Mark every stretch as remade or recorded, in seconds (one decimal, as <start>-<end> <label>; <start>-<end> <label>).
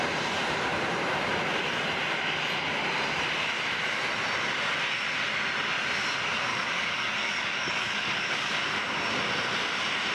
0.0-6.5 recorded; 6.5-8.5 remade; 8.5-10.1 recorded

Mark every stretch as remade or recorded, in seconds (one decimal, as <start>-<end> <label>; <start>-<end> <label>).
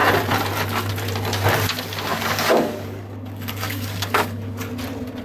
0.0-2.1 recorded; 2.1-4.7 remade; 4.7-5.2 recorded